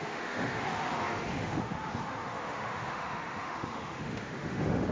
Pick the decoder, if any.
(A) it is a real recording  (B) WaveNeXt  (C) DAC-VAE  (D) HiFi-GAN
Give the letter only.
C